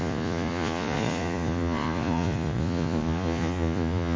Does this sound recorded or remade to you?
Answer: remade